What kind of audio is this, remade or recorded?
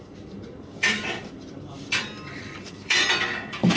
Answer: remade